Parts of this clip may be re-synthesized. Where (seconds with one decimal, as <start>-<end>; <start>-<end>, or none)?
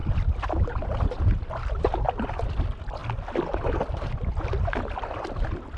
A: none